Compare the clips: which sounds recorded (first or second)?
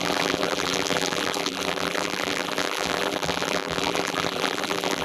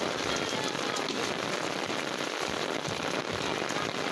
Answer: second